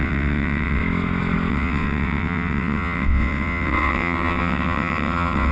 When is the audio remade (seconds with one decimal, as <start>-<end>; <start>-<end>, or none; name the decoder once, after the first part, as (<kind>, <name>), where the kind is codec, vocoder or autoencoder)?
0.0-0.8 (vocoder, WaveNeXt); 1.5-5.5